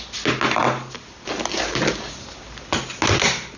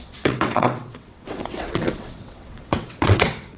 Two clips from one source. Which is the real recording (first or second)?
first